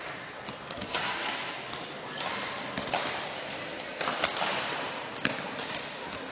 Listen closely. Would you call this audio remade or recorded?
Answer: recorded